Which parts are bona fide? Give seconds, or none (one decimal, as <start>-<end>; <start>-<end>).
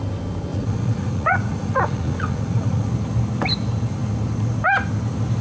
0.0-0.5; 2.9-5.4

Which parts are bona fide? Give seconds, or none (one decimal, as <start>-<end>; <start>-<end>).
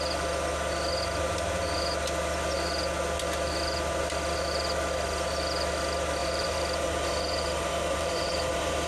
0.0-6.2